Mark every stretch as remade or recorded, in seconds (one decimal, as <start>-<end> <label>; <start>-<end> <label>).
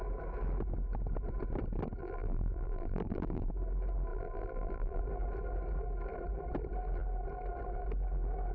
0.0-2.0 recorded; 2.0-3.5 remade; 3.5-4.1 recorded; 4.1-5.0 remade; 5.0-8.5 recorded